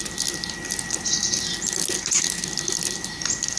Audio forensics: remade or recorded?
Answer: recorded